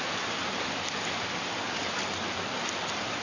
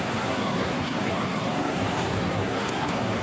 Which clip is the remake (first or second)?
second